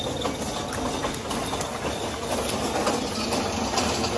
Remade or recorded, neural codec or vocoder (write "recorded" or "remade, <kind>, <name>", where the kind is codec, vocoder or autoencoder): recorded